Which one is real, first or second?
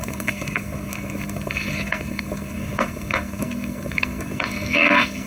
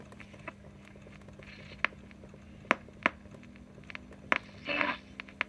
second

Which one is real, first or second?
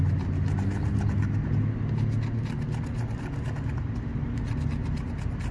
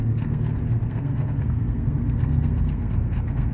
first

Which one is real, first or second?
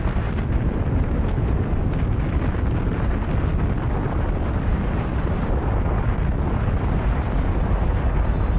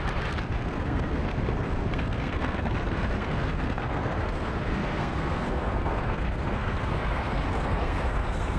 first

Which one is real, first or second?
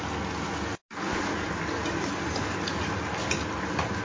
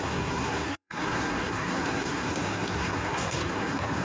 first